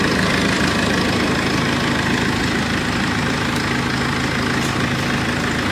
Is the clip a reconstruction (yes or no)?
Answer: no